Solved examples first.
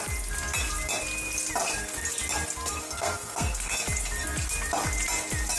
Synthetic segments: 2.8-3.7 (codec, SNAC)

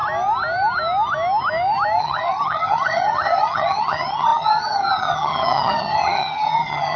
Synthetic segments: 2.0-7.0 (vocoder, HiFi-GAN)

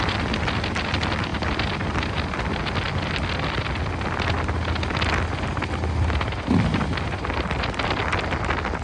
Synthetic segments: none

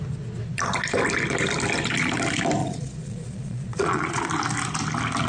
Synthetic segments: 2.6-4.3 (vocoder, Vocos)

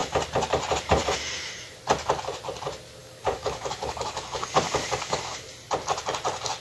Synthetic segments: 3.0-5.2 (codec, DAC)

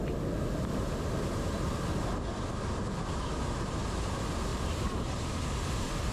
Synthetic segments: 4.5-5.3 (vocoder, BigVGAN v2)

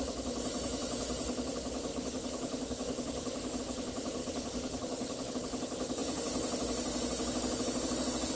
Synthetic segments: 1.9-3.6 (codec, DAC); 4.2-5.3